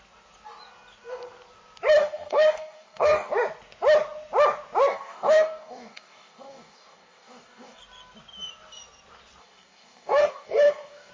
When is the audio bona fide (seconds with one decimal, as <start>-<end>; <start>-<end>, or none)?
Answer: 0.0-2.0; 3.3-4.9; 7.8-9.4